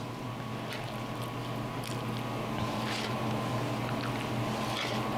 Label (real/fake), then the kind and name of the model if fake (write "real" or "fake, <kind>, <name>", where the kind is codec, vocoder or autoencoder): real